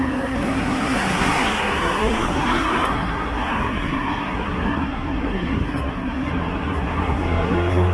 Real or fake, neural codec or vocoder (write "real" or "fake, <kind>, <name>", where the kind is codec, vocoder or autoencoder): fake, codec, SNAC